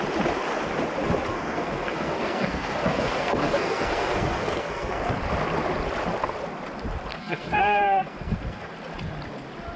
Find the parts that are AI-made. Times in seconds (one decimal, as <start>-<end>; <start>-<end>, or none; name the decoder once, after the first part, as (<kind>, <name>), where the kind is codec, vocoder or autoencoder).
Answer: 1.3-5.1 (codec, SNAC); 7.1-8.7

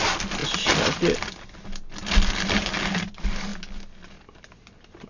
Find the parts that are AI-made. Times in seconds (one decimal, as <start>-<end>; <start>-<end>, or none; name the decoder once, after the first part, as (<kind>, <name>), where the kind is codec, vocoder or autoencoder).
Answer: none

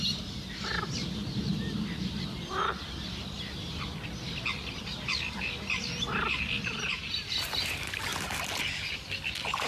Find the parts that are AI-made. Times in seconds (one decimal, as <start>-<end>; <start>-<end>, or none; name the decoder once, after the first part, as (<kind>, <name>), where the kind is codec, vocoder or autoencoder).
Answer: none

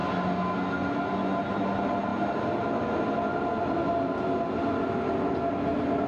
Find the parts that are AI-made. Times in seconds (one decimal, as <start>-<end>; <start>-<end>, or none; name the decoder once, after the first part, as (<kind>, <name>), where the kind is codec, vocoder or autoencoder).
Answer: none

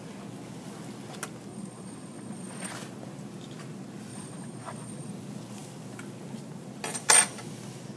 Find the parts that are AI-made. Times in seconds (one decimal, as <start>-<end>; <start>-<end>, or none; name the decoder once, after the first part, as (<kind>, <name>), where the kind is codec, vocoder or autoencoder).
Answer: 1.5-2.7 (vocoder, Vocos); 4.1-5.1